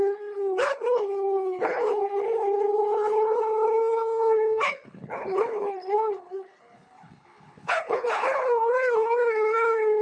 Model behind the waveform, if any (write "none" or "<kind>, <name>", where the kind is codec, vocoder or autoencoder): codec, HILCodec